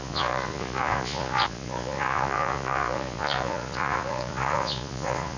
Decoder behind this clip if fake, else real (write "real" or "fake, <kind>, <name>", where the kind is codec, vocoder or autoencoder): fake, vocoder, Vocos